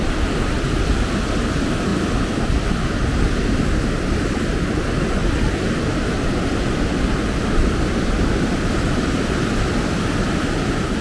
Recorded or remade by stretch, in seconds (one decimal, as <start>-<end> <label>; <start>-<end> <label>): 0.0-11.0 recorded